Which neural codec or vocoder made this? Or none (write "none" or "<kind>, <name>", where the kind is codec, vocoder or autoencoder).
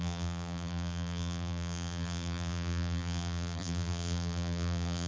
vocoder, BigVGAN v2